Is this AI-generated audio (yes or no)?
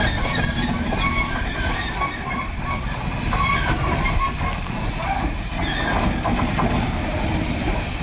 no